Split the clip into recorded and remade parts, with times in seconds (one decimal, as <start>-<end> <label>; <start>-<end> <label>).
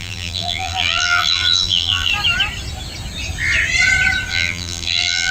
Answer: 0.0-2.1 remade; 2.1-4.3 recorded; 4.3-5.3 remade